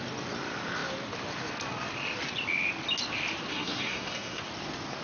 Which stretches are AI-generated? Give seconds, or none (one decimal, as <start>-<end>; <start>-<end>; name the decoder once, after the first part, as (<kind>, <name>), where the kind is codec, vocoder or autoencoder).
3.5-4.4 (codec, SNAC)